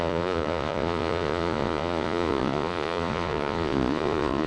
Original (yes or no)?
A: no